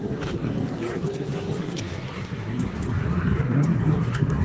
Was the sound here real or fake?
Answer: fake